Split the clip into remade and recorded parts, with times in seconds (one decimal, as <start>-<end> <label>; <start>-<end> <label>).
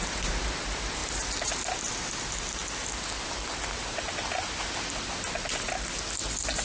0.0-6.6 recorded